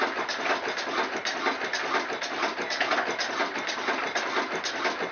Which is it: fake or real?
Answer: real